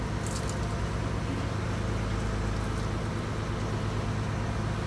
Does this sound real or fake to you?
real